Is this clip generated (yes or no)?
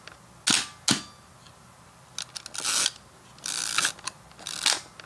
no